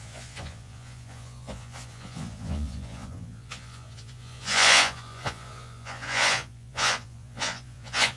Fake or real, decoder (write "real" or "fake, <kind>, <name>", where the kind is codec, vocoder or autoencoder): fake, vocoder, Vocos